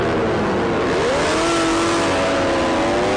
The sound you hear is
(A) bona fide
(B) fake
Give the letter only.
A